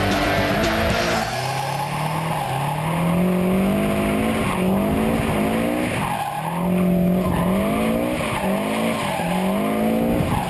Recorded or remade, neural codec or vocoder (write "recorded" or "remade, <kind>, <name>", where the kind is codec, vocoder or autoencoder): recorded